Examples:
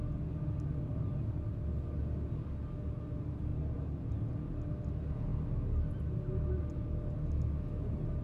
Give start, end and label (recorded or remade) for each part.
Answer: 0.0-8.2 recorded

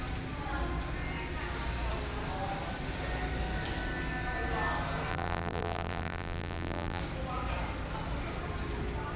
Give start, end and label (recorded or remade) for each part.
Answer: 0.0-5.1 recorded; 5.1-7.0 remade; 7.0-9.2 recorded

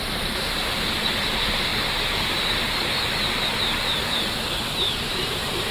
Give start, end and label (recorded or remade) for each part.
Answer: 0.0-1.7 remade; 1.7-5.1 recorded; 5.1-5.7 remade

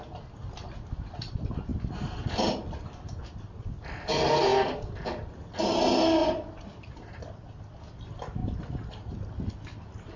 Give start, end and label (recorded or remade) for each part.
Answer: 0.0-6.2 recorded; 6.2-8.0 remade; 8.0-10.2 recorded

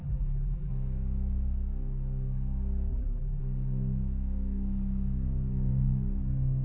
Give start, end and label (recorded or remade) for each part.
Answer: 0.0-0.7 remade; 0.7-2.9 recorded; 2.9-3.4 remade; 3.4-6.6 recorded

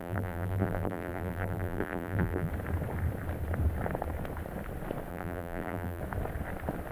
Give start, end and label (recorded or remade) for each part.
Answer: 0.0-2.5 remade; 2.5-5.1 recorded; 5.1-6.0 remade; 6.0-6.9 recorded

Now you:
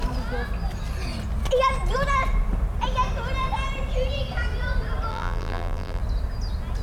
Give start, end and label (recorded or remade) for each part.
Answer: 0.0-5.1 recorded; 5.1-6.0 remade; 6.0-6.8 recorded

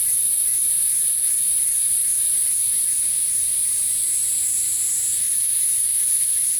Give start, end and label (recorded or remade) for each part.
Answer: 0.0-0.5 recorded; 0.5-1.3 remade; 1.3-2.4 recorded; 2.4-6.6 remade